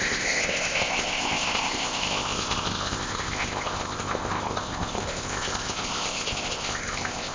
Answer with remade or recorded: remade